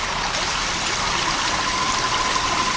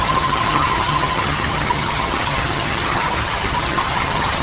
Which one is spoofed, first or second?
second